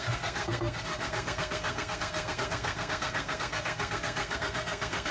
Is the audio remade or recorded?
remade